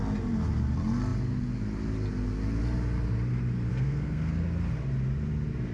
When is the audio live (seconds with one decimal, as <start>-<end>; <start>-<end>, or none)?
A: 0.0-3.7; 4.4-5.7